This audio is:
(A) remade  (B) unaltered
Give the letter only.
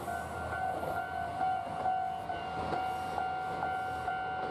B